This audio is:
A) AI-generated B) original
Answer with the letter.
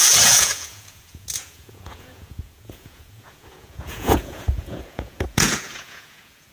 A